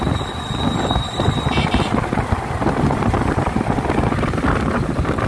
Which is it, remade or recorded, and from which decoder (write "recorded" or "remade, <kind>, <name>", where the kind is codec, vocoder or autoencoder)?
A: recorded